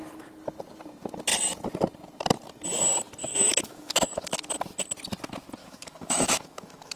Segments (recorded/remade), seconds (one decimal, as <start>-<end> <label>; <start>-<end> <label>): 0.0-3.2 recorded; 3.2-4.5 remade; 4.5-5.6 recorded; 5.6-7.0 remade